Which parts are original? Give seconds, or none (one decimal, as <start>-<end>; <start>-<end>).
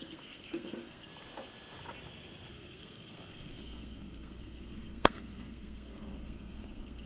1.1-2.5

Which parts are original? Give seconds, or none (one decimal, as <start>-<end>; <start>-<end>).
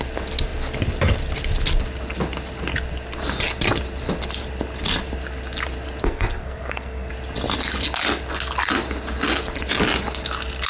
0.0-6.0; 7.1-10.7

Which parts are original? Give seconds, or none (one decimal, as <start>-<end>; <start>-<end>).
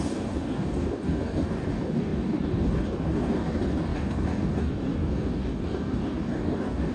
none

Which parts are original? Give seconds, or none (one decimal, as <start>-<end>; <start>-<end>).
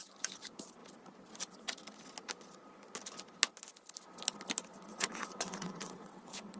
0.0-4.9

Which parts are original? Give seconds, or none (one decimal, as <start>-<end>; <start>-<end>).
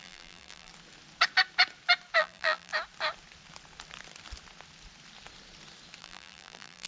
0.7-2.2; 2.7-6.0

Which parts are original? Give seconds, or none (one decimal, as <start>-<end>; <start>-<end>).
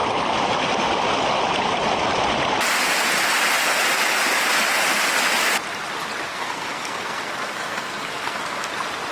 0.0-6.3; 8.7-9.1